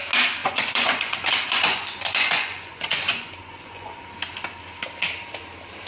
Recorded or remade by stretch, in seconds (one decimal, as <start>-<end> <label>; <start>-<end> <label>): 0.0-0.4 recorded; 0.4-3.9 remade; 3.9-5.9 recorded